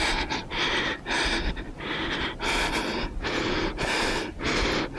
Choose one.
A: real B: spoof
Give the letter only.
A